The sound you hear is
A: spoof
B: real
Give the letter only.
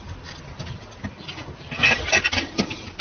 B